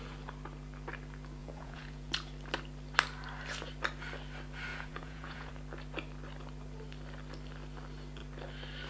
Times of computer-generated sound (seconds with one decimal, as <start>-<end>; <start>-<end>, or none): 1.4-2.1; 4.7-5.5